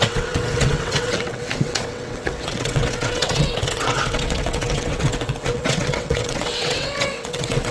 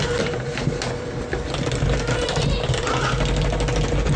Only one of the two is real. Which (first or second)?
second